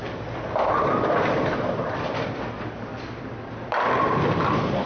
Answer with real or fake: real